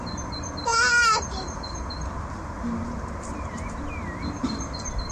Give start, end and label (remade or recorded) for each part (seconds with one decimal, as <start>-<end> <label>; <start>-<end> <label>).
0.0-0.7 recorded; 0.7-3.8 remade; 3.8-5.1 recorded